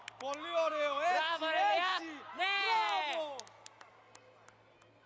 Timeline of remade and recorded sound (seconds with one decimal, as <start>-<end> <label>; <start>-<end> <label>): 0.0-5.1 recorded